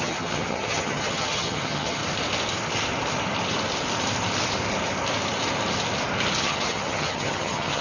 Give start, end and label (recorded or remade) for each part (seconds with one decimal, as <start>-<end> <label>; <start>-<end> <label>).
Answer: 0.0-2.0 remade; 2.0-6.4 recorded; 6.4-7.8 remade